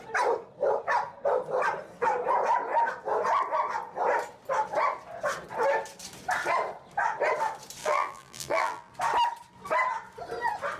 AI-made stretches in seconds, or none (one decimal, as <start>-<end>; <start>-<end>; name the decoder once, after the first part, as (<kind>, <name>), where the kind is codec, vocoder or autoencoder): 7.8-8.9 (vocoder, BigVGAN v2)